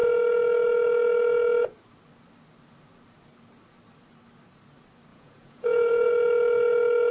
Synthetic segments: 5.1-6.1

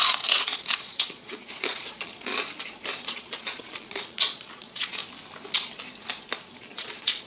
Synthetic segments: 0.0-2.3; 3.0-5.0; 6.6-7.3

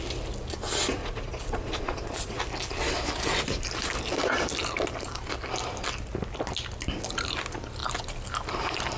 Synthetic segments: 1.0-2.4

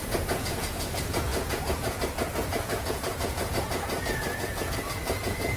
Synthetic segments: 0.0-5.6

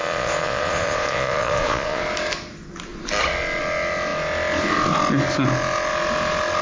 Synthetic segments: 0.0-2.0

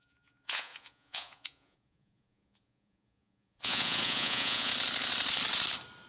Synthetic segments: 0.0-4.7

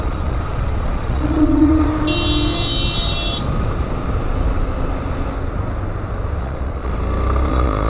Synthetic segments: 0.0-1.9; 6.4-6.9; 7.5-7.9

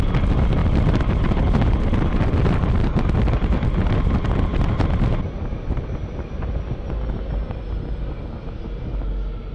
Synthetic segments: none